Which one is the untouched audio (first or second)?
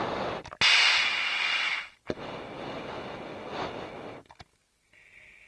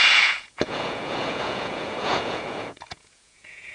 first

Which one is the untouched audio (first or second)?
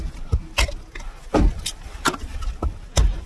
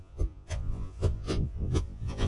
first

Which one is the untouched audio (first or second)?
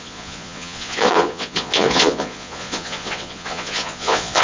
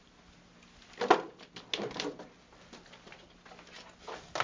second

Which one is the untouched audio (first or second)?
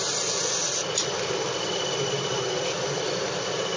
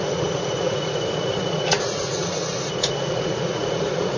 first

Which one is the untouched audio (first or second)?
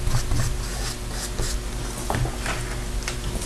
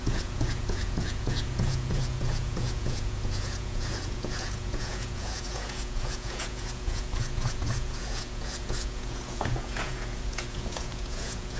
first